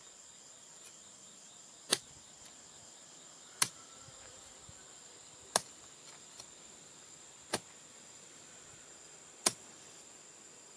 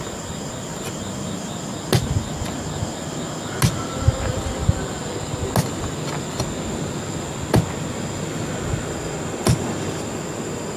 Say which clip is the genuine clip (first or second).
second